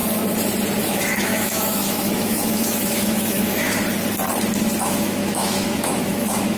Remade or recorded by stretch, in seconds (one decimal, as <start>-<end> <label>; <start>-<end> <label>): 0.0-0.8 recorded; 0.8-3.8 remade; 3.8-4.8 recorded; 4.8-6.6 remade